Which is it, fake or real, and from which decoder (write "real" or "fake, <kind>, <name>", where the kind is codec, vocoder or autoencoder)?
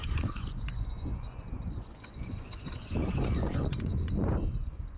fake, vocoder, Vocos